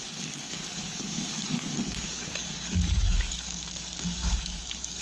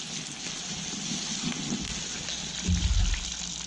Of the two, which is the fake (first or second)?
first